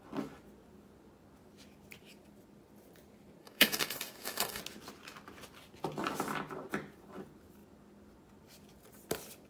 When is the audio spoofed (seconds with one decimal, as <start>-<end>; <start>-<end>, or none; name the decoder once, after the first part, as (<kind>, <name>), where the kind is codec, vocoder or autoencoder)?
3.4-4.6 (codec, DAC)